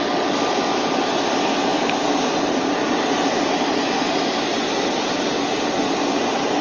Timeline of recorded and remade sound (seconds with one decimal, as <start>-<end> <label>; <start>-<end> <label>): 0.0-6.6 recorded